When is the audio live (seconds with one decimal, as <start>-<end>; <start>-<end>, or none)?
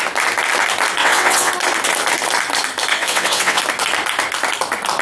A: 0.0-1.0; 1.5-2.9; 3.6-5.0